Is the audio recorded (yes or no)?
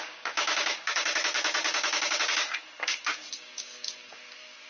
no